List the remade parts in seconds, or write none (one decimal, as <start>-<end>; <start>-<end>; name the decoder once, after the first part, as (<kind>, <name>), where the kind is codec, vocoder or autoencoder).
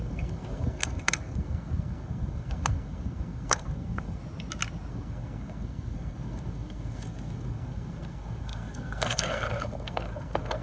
0.0-4.2 (codec, SNAC); 4.9-10.6